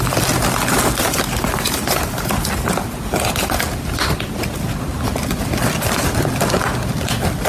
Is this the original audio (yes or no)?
yes